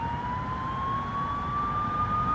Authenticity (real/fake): real